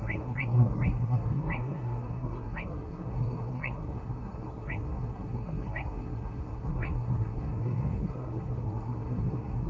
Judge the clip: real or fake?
fake